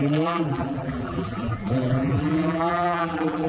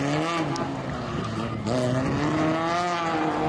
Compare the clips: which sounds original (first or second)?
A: second